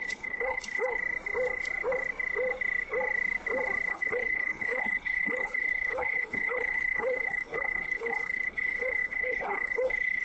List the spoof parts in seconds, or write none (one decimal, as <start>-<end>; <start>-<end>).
0.0-1.0; 3.9-10.2